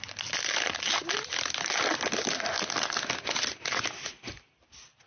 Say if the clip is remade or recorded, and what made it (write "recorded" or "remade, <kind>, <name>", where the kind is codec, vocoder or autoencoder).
recorded